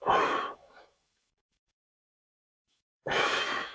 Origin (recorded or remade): remade